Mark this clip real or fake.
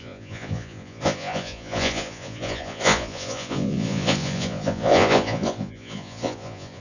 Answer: fake